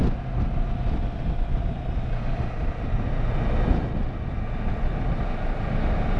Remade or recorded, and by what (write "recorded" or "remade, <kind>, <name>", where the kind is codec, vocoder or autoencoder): recorded